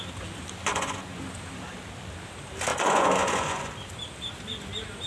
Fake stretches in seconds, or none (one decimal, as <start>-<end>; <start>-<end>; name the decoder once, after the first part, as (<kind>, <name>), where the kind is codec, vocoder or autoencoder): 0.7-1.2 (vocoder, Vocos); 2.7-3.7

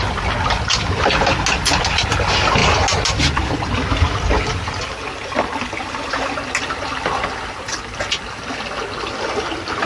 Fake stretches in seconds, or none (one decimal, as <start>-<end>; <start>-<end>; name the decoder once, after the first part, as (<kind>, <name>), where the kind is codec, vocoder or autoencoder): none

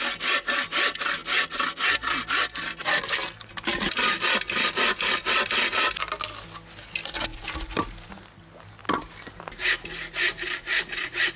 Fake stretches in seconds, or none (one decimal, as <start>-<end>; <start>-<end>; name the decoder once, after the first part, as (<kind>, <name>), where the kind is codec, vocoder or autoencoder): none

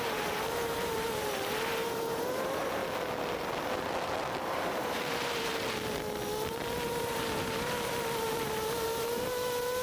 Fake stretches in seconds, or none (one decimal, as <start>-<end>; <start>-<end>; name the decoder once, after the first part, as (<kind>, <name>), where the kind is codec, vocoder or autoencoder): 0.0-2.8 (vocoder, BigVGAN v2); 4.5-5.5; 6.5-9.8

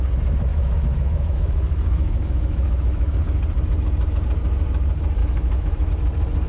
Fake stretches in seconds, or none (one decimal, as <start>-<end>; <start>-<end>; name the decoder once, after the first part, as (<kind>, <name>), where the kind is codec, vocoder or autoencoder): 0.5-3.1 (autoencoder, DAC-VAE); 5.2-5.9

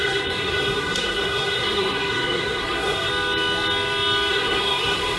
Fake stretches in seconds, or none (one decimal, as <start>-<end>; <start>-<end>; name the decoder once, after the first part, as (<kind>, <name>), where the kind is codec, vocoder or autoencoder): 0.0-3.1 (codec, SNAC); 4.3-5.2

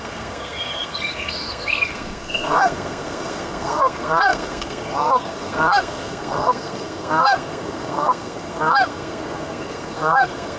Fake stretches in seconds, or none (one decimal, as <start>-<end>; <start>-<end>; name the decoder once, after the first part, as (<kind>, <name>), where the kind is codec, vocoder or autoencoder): 0.0-10.6 (codec, SNAC)